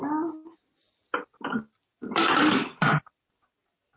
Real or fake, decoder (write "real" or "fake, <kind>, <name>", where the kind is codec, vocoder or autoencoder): real